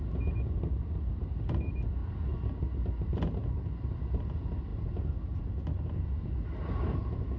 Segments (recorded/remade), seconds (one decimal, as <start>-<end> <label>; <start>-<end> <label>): 0.0-7.4 recorded